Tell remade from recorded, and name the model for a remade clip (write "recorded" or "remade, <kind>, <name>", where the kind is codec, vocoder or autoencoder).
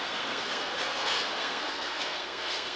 remade, codec, SNAC